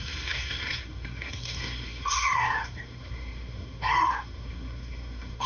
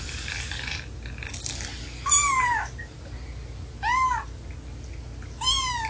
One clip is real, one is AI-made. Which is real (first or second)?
second